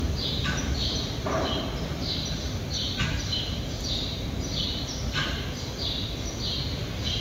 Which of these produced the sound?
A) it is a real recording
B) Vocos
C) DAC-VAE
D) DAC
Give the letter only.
A